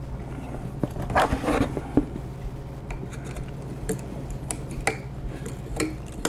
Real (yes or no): yes